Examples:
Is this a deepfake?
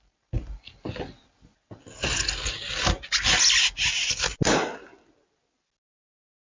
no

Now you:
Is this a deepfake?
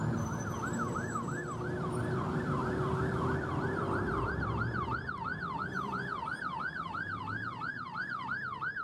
yes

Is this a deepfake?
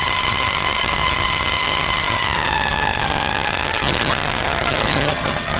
yes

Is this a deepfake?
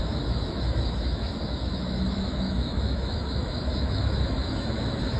yes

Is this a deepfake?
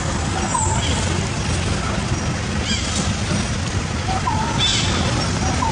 no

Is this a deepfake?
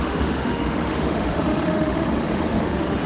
yes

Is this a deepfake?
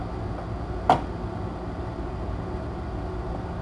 no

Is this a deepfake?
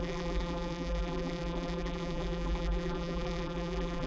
yes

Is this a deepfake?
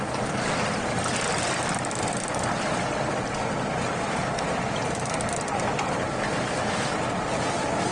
no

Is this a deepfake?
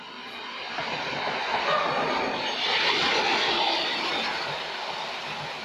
no